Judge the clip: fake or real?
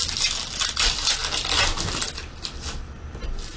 real